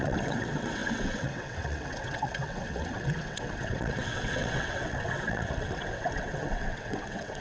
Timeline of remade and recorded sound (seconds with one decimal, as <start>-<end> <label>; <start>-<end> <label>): 0.0-7.4 remade